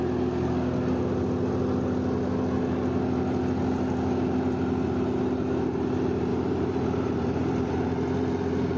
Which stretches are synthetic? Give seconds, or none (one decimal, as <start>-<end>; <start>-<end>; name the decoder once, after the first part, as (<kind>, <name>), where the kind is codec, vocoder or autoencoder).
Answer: 6.3-7.7 (vocoder, BigVGAN v2)